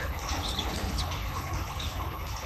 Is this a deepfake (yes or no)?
yes